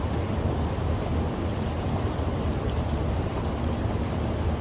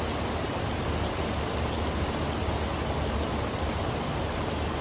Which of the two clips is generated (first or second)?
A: first